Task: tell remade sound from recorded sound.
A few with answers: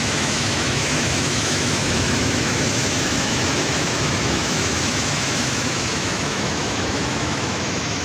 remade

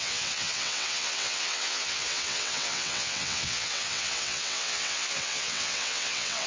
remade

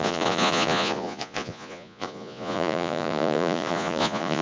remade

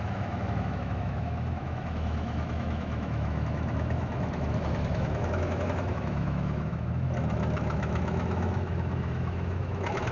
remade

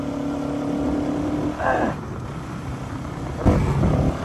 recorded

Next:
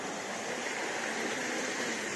recorded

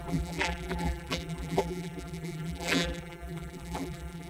remade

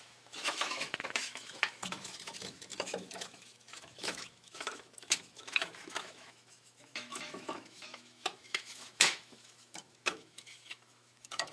remade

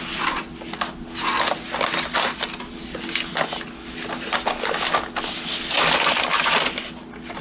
recorded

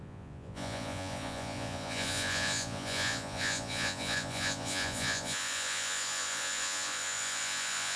remade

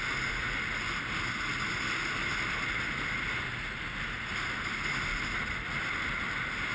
recorded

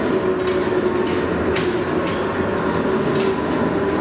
recorded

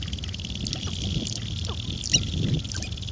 recorded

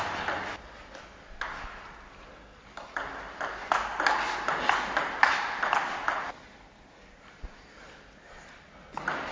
recorded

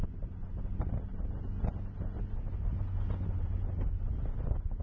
recorded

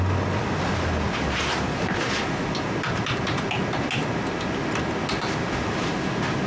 recorded